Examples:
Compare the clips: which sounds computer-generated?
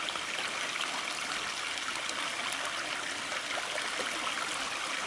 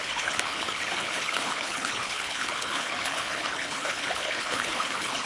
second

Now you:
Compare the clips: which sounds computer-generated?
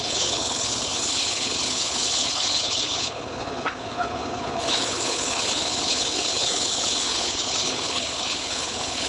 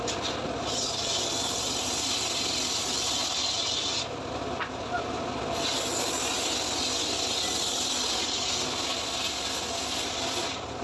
first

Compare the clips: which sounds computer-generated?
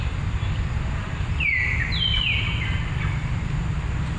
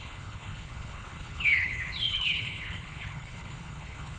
second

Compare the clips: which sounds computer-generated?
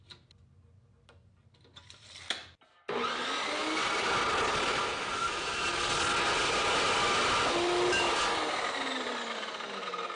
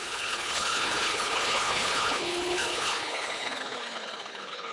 second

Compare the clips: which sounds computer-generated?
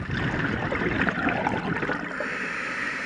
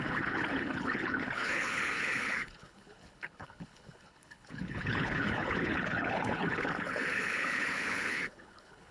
second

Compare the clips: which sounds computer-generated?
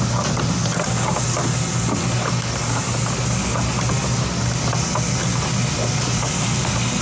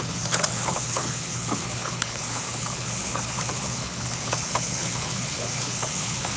second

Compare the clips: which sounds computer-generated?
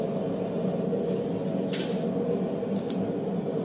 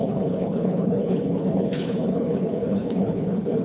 second